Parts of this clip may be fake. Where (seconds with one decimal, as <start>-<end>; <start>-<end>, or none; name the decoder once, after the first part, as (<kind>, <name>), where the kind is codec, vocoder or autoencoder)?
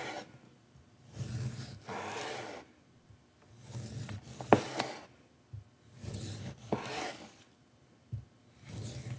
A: 1.7-3.3 (vocoder, BigVGAN v2)